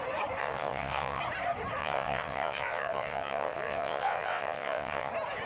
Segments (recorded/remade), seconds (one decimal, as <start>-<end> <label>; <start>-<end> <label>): 0.0-0.4 recorded; 0.4-1.2 remade; 1.2-1.8 recorded; 1.8-5.1 remade; 5.1-5.5 recorded